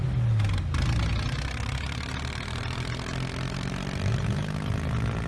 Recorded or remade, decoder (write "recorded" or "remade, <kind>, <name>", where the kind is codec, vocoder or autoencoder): recorded